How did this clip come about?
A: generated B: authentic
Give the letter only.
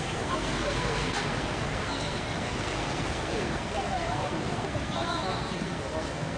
A